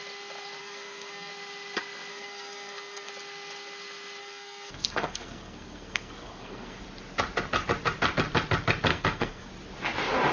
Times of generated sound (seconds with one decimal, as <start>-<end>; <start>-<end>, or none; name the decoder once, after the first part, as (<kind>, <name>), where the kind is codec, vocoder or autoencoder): 0.6-1.3 (codec, SNAC); 2.1-3.1; 4.2-6.8; 8.9-9.5